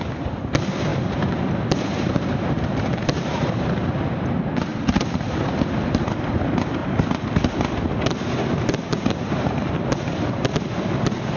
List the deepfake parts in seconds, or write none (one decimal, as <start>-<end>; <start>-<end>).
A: 0.9-3.7; 4.7-5.7; 8.9-9.7